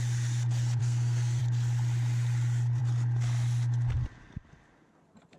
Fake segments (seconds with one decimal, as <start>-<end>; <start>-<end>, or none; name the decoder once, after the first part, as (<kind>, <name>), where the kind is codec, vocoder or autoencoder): 0.8-1.4 (codec, SNAC)